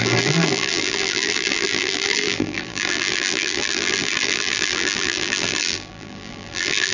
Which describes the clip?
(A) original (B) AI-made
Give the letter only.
B